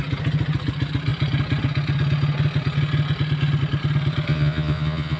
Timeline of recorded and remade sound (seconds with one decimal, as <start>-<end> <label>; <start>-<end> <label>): 0.0-4.3 recorded; 4.3-5.2 remade